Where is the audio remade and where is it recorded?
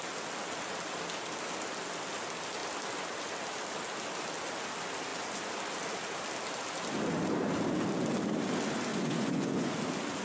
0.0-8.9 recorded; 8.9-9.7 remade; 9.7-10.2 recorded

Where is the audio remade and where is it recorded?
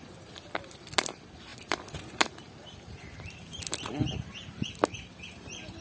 0.0-5.8 recorded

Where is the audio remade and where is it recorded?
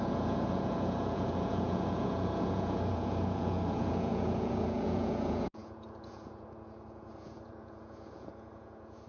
0.0-9.1 remade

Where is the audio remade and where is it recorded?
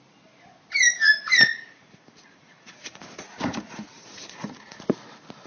0.0-1.5 recorded; 1.5-4.8 remade; 4.8-5.5 recorded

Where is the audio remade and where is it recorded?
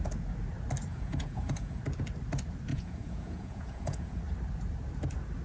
0.0-0.9 recorded; 0.9-1.8 remade; 1.8-2.7 recorded; 2.7-4.2 remade; 4.2-5.4 recorded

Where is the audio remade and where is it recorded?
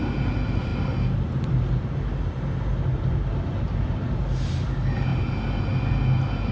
0.0-6.5 recorded